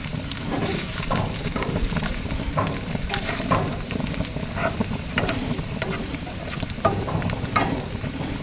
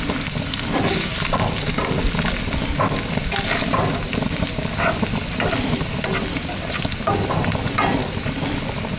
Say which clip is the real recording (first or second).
second